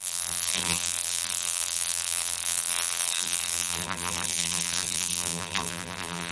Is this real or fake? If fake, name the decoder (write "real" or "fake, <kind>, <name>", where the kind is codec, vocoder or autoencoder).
fake, vocoder, BigVGAN v2